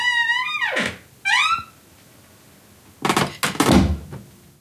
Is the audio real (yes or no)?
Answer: yes